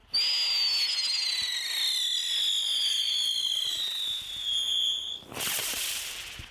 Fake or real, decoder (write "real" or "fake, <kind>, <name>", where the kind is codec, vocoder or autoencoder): real